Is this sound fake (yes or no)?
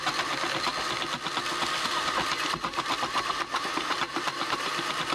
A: no